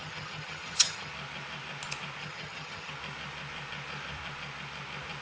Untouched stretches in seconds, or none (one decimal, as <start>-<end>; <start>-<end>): 1.1-2.2; 2.9-5.2